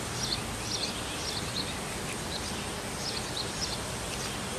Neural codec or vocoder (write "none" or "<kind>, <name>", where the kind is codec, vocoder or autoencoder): none